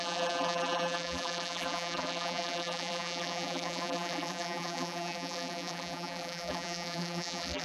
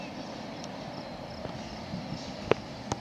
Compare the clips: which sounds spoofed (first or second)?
first